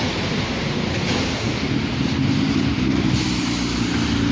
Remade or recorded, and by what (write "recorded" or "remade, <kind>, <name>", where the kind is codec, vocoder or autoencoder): recorded